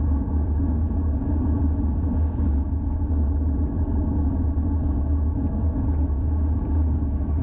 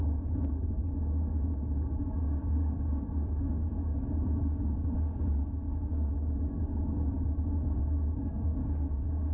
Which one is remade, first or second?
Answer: second